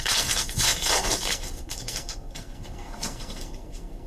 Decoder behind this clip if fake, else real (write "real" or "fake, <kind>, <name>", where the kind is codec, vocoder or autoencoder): fake, codec, SNAC